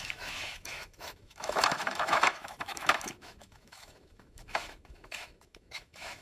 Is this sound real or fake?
fake